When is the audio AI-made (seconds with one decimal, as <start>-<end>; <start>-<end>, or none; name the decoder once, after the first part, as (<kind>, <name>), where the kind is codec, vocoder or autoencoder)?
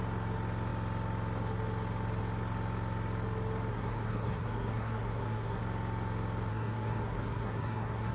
3.7-5.6 (codec, SNAC); 6.5-8.1